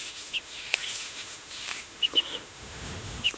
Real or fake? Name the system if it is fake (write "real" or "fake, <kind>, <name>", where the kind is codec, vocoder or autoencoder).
fake, autoencoder, DAC-VAE